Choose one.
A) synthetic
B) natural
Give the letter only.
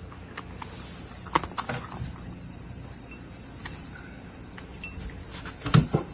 B